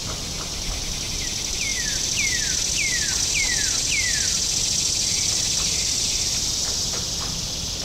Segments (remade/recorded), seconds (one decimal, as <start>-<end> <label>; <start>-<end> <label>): 0.0-7.8 recorded